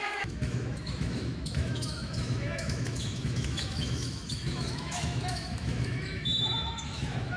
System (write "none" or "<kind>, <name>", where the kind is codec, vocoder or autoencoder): autoencoder, DAC-VAE